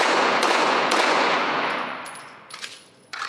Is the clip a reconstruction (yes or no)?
yes